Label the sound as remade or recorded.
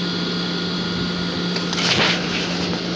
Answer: recorded